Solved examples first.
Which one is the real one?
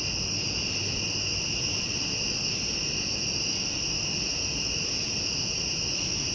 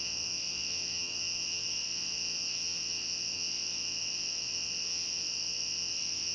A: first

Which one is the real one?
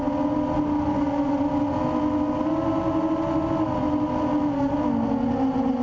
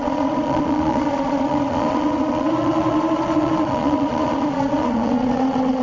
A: first